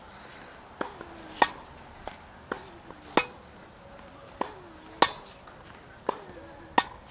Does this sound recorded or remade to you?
recorded